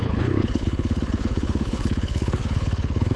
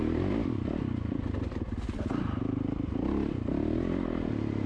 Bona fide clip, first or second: second